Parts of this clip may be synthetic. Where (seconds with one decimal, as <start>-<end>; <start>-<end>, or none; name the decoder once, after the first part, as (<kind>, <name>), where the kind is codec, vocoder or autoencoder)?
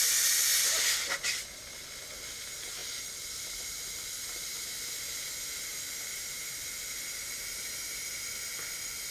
none